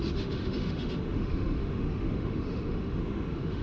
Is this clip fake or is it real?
fake